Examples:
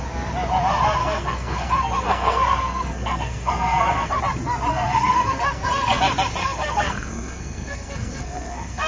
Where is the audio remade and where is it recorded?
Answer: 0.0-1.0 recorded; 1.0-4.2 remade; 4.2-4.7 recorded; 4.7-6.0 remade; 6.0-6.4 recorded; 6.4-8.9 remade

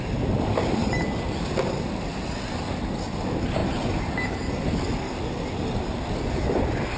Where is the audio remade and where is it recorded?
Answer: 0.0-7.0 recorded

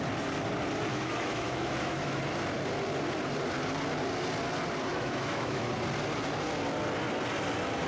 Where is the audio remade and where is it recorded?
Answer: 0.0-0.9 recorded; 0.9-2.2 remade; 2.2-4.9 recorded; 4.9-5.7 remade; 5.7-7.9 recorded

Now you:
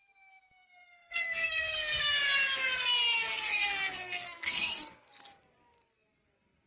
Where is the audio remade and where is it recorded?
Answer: 0.0-2.0 remade; 2.0-3.3 recorded; 3.3-5.1 remade; 5.1-6.7 recorded

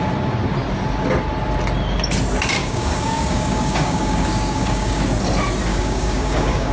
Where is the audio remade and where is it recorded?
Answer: 0.0-2.6 recorded; 2.6-5.0 remade; 5.0-5.7 recorded; 5.7-6.7 remade

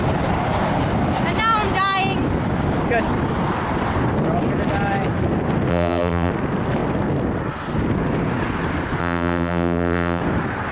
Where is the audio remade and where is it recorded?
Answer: 0.0-5.7 recorded; 5.7-6.3 remade; 6.3-9.0 recorded; 9.0-10.2 remade; 10.2-10.7 recorded